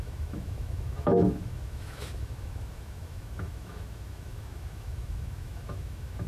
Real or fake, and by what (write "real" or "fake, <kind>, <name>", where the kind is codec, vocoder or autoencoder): fake, autoencoder, DAC-VAE